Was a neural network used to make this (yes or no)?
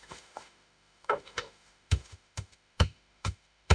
yes